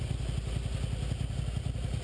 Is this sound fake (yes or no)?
no